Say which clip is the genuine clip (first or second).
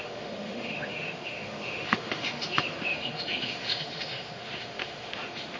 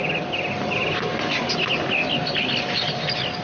second